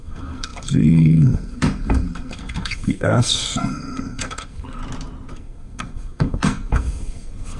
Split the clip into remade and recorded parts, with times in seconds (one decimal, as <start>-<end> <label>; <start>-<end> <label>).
0.0-4.8 remade; 4.8-5.3 recorded; 5.3-7.6 remade